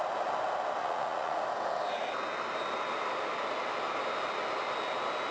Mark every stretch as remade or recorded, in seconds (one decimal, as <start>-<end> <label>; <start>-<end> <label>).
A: 0.0-0.8 recorded; 0.8-1.4 remade; 1.4-5.3 recorded